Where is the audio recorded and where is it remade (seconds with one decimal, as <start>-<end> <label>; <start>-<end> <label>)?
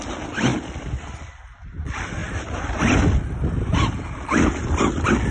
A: 0.0-5.3 recorded